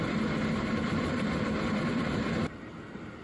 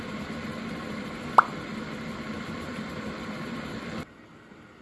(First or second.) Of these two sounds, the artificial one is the first